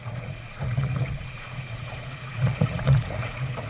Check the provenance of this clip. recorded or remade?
remade